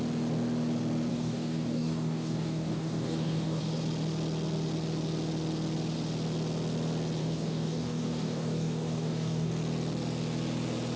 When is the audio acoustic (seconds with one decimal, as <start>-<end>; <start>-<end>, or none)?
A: 0.0-1.1; 3.6-7.2; 9.5-11.0